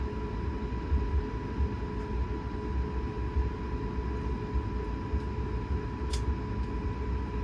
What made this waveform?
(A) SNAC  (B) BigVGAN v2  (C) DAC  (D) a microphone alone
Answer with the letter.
D